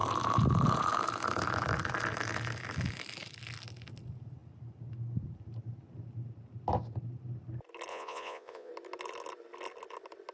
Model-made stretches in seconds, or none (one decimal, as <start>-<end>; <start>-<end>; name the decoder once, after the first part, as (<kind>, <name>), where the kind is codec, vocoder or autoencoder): 7.9-8.7 (vocoder, Vocos)